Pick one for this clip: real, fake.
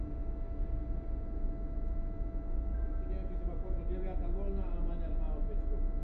real